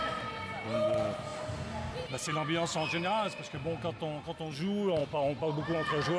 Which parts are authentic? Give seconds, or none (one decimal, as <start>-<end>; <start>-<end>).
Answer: 0.0-6.2